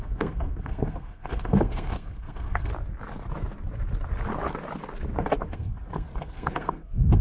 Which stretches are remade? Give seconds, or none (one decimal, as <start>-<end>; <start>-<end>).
0.0-2.7; 5.5-7.2